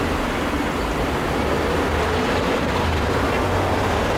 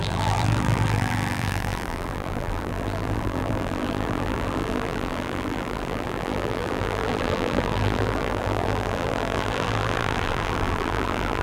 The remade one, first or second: second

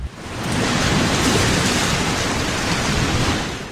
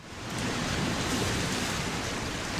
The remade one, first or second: second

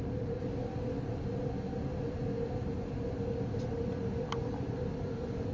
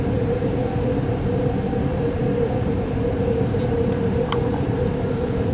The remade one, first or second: second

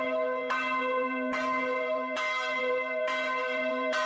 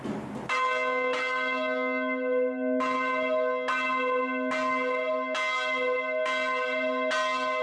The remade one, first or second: first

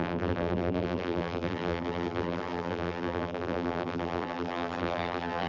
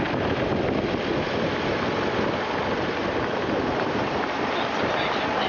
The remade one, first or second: first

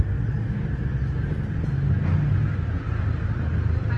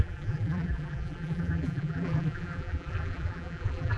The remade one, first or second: second